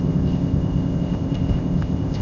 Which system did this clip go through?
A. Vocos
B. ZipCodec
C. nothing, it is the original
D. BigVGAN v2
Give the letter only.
B